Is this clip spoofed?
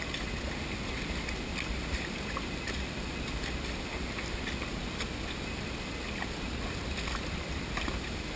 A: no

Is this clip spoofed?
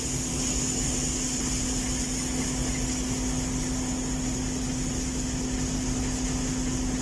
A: no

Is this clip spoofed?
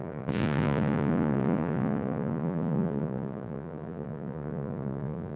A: yes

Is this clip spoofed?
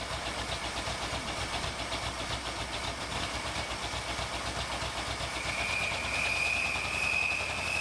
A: no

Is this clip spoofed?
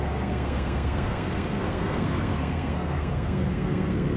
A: yes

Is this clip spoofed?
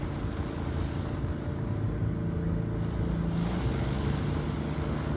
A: no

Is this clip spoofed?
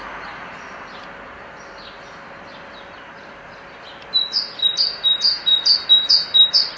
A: no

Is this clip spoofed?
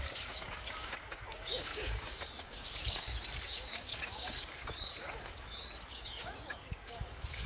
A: yes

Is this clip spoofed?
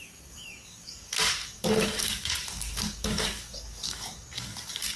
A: yes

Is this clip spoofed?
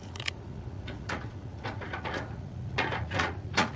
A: yes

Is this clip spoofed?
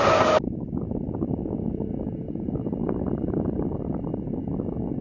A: no